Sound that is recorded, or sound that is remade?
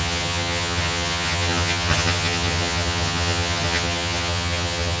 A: remade